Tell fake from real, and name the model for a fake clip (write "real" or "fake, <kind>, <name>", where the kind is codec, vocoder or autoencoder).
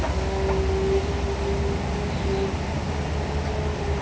real